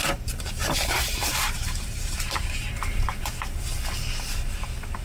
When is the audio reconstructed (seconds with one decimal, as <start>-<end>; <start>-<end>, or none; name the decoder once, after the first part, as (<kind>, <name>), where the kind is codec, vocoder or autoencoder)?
0.6-3.2 (vocoder, BigVGAN v2)